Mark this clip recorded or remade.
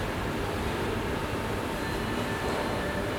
remade